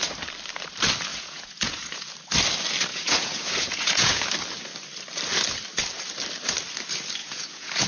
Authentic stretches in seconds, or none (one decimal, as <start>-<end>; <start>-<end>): 0.0-1.1; 2.1-2.9; 4.2-7.2